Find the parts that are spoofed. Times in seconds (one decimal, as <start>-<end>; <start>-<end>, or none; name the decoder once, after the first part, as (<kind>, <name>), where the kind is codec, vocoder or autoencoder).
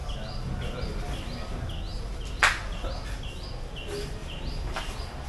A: 4.2-4.8 (vocoder, BigVGAN v2)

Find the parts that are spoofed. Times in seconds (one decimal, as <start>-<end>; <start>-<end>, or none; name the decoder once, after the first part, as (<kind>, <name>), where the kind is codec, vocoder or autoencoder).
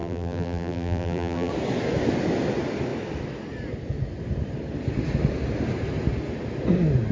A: 0.0-1.5 (vocoder, BigVGAN v2)